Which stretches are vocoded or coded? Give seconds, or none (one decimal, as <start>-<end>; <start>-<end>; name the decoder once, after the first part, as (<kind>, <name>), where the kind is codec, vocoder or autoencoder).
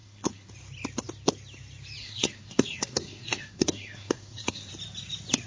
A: 0.0-0.5 (codec, SNAC); 2.0-4.7